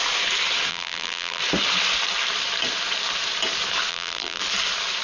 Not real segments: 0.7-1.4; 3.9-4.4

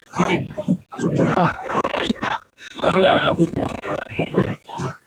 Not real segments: 1.3-4.4

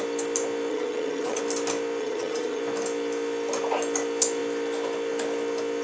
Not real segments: 0.7-1.4; 2.0-2.6